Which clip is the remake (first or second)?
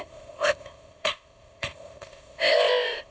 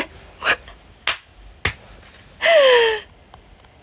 first